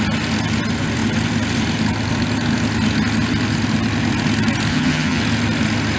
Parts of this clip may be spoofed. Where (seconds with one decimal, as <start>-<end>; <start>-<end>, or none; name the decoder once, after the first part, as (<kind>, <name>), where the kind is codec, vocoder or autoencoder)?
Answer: 4.7-5.2 (vocoder, HiFi-GAN)

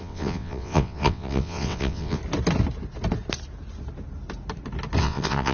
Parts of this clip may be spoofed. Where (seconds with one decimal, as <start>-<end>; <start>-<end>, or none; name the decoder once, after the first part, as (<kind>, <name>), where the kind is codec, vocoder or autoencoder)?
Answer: 0.0-2.2 (vocoder, WaveNeXt); 5.0-5.5

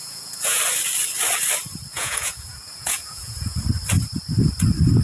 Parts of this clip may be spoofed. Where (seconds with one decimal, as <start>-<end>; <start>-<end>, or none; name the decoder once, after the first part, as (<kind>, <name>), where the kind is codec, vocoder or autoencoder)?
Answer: 0.0-0.6 (vocoder, Vocos); 1.9-3.6

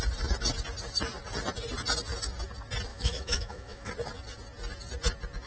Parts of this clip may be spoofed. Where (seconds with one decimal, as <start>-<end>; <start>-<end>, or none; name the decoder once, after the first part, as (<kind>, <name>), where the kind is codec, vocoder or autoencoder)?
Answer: 2.9-3.9 (autoencoder, DAC-VAE)

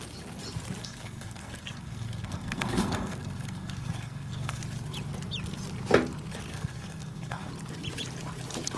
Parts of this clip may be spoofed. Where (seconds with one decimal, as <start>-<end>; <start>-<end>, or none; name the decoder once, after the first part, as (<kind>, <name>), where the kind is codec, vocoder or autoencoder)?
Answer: 0.8-4.6 (codec, SNAC); 6.5-7.5

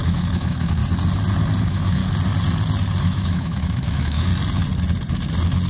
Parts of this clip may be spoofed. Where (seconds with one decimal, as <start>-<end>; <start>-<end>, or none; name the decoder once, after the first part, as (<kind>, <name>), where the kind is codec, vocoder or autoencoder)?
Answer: 0.0-0.8 (autoencoder, DAC-VAE); 1.6-2.0; 3.0-4.3